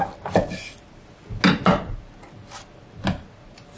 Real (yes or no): yes